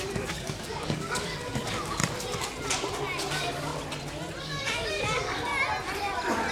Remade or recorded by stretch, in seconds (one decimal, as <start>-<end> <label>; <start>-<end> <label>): 0.0-2.0 remade; 2.0-3.3 recorded; 3.3-3.7 remade; 3.7-4.4 recorded; 4.4-5.5 remade; 5.5-6.5 recorded